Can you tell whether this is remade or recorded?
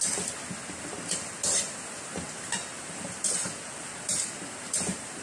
recorded